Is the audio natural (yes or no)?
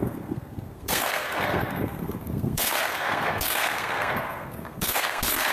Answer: no